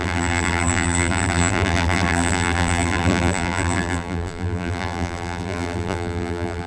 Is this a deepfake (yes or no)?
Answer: yes